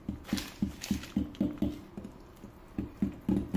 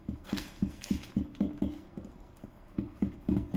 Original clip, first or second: first